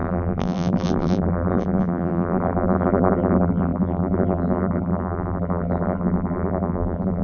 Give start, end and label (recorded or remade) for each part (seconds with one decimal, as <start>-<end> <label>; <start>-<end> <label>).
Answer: 0.0-7.2 remade